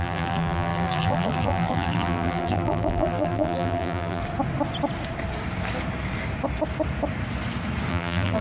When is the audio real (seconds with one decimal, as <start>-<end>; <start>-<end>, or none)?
4.2-7.9